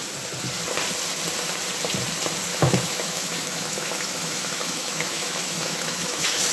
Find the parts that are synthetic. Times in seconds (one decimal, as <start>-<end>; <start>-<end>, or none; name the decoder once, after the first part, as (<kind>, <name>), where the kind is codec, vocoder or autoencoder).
2.5-6.5 (autoencoder, DAC-VAE)